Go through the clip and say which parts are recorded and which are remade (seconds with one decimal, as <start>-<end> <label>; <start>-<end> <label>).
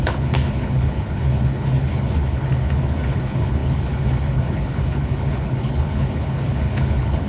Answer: 0.0-7.3 remade